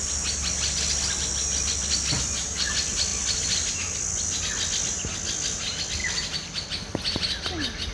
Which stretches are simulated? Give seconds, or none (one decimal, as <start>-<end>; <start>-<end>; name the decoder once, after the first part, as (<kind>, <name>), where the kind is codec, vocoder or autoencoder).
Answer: none